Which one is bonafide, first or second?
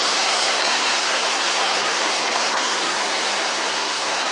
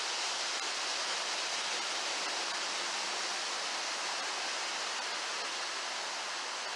second